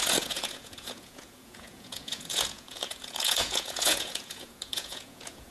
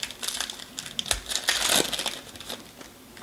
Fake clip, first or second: first